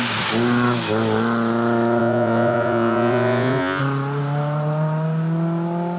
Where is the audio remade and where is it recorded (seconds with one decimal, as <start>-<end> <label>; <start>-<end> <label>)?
0.0-2.0 recorded; 2.0-3.8 remade; 3.8-6.0 recorded